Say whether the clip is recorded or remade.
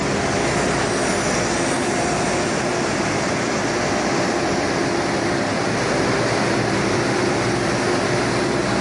recorded